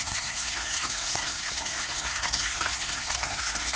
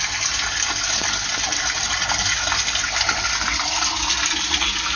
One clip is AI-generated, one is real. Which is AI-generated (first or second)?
first